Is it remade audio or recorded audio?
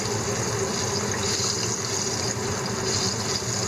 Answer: recorded